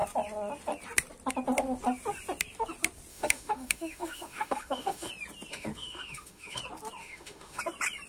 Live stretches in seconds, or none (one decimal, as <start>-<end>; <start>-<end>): 0.0-3.1; 5.1-5.5; 6.6-7.0; 7.6-8.1